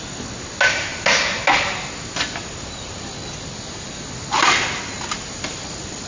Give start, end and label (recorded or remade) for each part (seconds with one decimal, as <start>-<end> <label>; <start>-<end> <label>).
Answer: 0.0-6.1 recorded